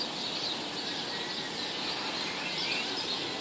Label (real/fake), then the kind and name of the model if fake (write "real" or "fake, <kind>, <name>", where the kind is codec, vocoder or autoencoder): real